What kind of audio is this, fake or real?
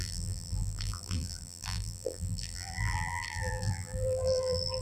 fake